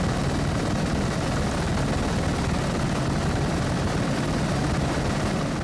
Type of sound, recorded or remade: recorded